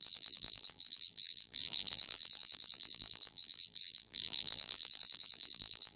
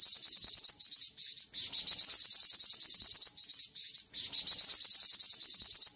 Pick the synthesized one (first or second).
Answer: first